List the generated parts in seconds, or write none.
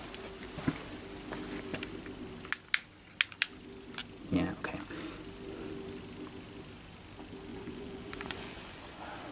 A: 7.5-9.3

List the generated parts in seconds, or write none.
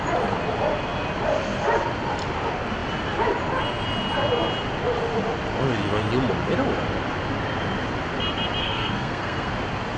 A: 8.6-9.5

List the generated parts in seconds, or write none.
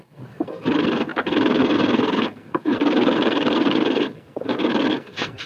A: 0.0-5.5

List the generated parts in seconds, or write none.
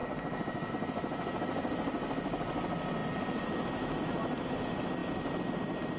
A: 0.0-0.7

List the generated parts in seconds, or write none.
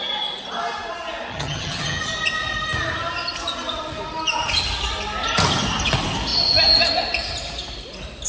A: 1.3-2.0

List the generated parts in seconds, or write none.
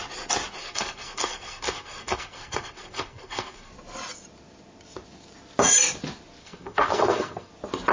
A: 0.6-3.7; 6.4-7.5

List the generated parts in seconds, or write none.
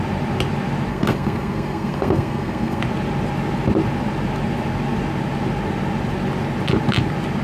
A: 0.9-2.8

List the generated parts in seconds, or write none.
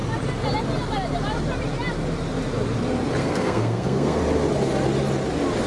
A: 3.2-4.2